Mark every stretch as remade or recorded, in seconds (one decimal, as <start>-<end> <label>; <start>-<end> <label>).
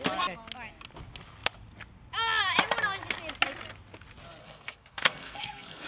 0.0-4.4 recorded; 4.4-5.9 remade